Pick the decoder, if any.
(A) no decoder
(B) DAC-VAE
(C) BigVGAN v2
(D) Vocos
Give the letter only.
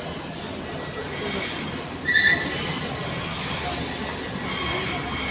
A